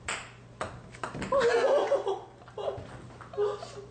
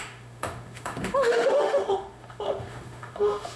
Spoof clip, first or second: second